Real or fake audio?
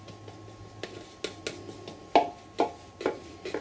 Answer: real